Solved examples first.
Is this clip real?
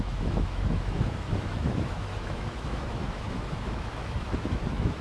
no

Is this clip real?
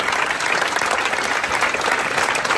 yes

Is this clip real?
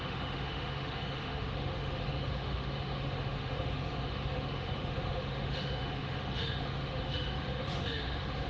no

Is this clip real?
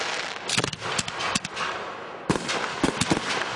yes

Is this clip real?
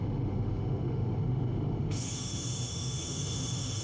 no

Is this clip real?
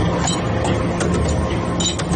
yes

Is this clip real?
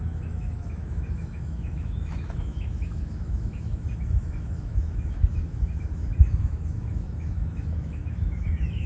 no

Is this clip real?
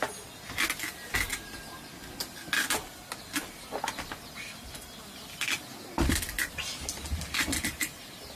yes